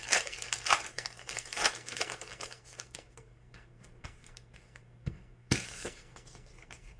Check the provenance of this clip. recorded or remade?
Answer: remade